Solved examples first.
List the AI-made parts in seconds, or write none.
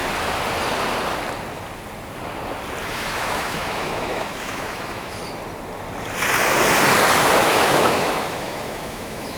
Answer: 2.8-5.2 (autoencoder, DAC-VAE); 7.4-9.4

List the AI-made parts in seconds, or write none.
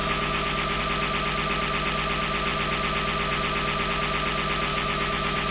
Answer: 0.0-0.8 (autoencoder, DAC-VAE); 4.7-5.5